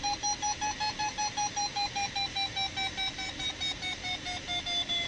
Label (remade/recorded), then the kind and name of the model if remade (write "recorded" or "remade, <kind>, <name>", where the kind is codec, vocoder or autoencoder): recorded